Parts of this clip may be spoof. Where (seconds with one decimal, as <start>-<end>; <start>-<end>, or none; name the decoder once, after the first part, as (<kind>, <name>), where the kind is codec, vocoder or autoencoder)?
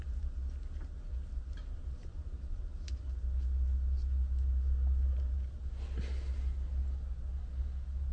none